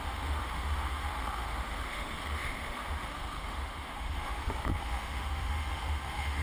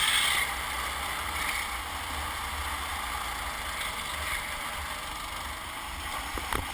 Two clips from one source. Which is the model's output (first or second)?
first